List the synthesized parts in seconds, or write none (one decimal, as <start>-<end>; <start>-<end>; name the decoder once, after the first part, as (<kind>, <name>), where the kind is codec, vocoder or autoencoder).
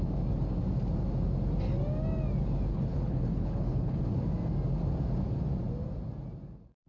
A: 2.7-4.0 (codec, HILCodec)